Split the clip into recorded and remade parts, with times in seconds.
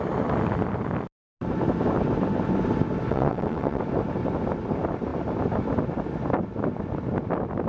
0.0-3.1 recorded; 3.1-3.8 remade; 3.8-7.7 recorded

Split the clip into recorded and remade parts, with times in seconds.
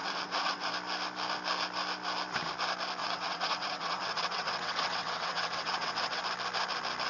0.0-0.7 remade; 0.7-3.0 recorded; 3.0-6.2 remade; 6.2-7.1 recorded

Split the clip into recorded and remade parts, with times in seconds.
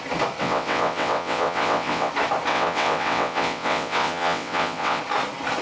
0.0-0.4 recorded; 0.4-2.1 remade; 2.1-2.5 recorded; 2.5-5.0 remade; 5.0-5.6 recorded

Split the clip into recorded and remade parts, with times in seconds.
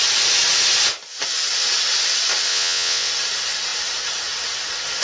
0.0-2.5 recorded; 2.5-3.1 remade; 3.1-5.0 recorded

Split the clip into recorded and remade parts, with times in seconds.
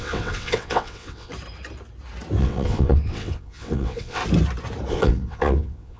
0.0-1.3 remade; 1.3-2.4 recorded; 2.4-4.2 remade; 4.2-4.9 recorded; 4.9-6.0 remade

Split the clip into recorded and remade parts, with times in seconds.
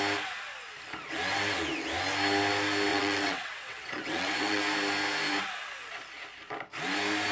0.0-2.9 recorded; 2.9-4.6 remade; 4.6-7.3 recorded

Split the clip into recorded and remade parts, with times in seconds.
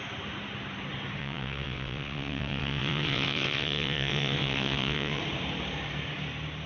0.0-1.2 recorded; 1.2-5.2 remade; 5.2-6.7 recorded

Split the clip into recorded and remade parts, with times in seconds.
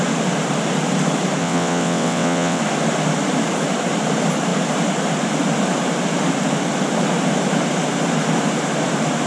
0.0-1.4 recorded; 1.4-2.6 remade; 2.6-9.3 recorded